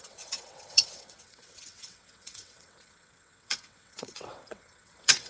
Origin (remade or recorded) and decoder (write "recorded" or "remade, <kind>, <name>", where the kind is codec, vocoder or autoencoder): remade, vocoder, WaveNeXt